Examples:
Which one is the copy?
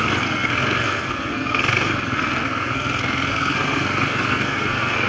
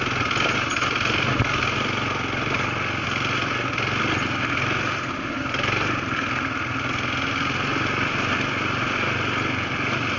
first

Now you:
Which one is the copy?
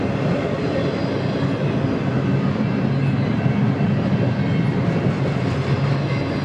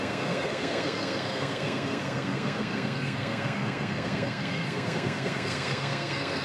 second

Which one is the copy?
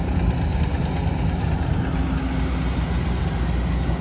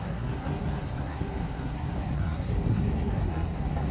second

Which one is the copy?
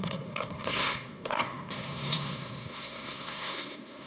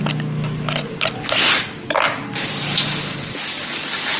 first